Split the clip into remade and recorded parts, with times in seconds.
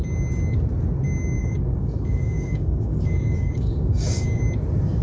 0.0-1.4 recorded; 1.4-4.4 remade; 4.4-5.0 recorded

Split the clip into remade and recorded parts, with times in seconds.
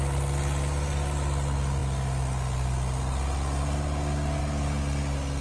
0.0-5.4 recorded